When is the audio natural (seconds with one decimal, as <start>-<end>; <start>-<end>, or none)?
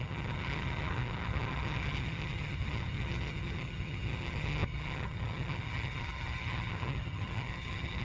none